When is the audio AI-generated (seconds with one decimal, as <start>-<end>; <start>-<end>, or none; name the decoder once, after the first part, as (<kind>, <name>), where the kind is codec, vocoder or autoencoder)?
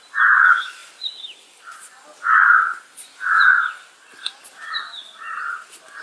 none